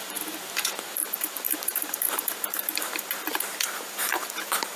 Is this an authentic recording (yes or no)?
no